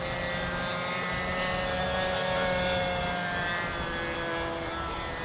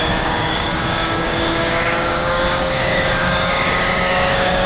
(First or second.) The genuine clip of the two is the first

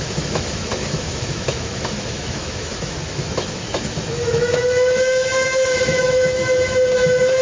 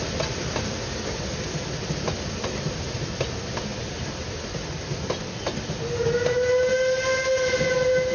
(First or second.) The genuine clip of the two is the second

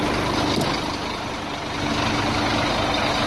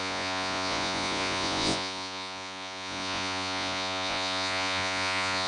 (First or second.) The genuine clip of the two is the first